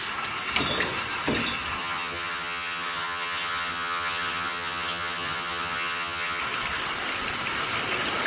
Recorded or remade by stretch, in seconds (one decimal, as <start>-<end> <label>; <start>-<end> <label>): 0.0-1.8 recorded; 1.8-6.4 remade; 6.4-8.3 recorded

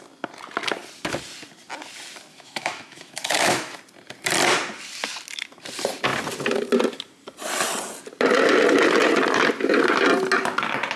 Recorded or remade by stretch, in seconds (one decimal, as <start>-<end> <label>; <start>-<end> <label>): 0.0-2.3 recorded; 2.3-3.8 remade; 3.8-11.0 recorded

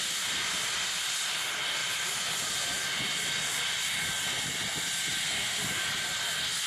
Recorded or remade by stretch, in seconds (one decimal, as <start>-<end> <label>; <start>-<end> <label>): 0.0-6.7 recorded